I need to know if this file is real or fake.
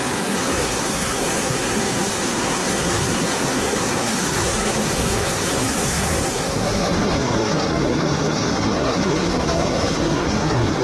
fake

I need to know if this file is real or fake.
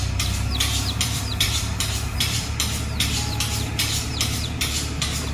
fake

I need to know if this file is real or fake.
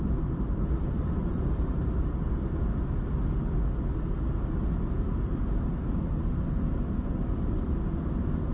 real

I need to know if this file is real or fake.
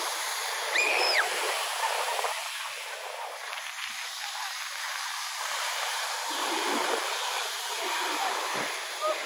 fake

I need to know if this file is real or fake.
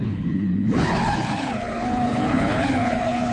fake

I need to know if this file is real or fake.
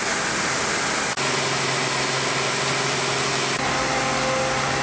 real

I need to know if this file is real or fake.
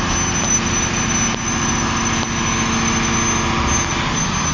real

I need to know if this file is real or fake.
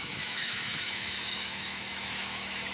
fake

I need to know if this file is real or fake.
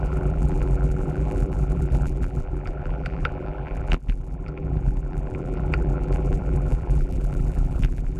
fake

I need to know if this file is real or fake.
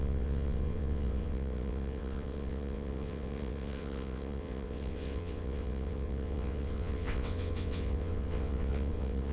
fake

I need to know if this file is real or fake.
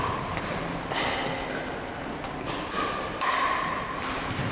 real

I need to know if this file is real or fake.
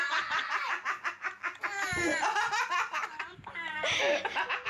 fake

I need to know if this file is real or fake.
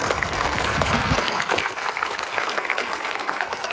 fake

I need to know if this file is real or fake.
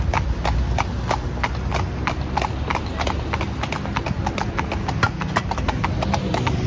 real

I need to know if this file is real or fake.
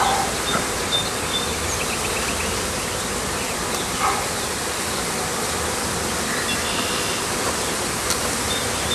fake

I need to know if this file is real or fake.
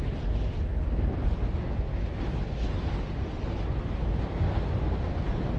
real